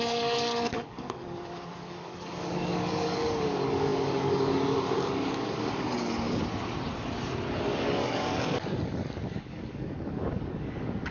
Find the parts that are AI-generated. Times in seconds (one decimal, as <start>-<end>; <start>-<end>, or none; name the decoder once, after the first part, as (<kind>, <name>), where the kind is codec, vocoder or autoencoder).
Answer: 0.0-6.4 (codec, DAC); 7.5-11.1